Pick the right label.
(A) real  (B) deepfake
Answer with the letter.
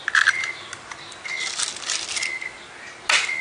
A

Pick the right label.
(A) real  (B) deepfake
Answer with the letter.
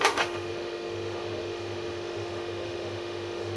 B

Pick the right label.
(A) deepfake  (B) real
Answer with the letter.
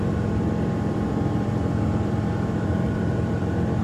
A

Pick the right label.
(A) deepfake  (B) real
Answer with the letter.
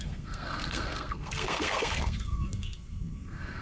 A